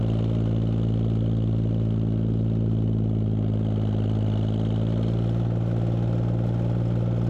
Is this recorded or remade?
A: recorded